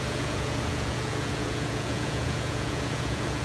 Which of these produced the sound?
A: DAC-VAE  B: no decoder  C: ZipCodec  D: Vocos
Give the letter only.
D